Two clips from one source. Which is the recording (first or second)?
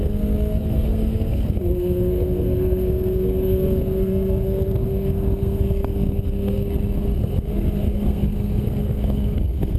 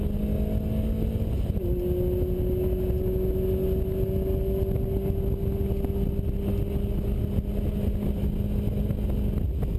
second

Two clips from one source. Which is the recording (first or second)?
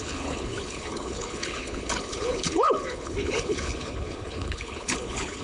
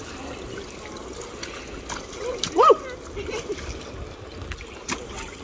second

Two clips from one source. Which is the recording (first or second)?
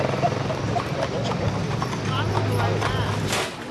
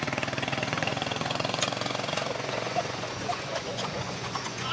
first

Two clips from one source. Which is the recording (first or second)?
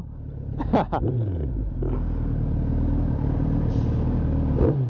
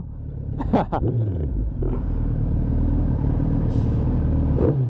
first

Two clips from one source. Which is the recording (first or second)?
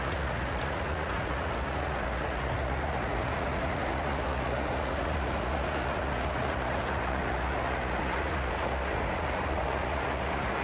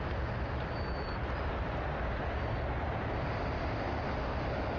second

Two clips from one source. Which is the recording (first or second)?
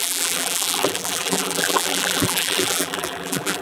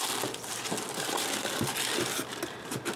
second